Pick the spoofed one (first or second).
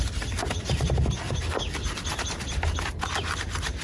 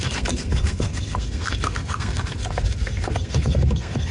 second